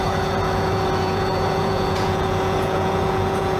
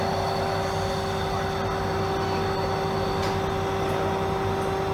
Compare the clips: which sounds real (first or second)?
second